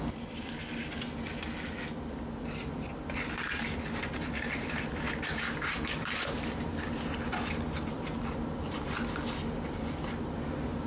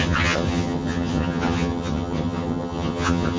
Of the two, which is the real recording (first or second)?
first